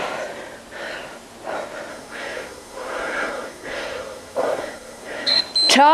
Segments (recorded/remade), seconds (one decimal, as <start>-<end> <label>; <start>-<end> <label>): 0.0-1.9 recorded; 1.9-5.4 remade; 5.4-5.9 recorded